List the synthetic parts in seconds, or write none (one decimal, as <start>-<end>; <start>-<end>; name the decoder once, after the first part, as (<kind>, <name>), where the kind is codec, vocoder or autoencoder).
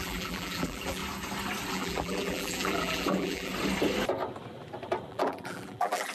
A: 0.0-1.0 (vocoder, BigVGAN v2); 1.7-3.5; 5.1-6.1